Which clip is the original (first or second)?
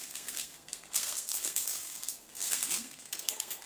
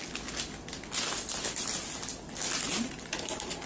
second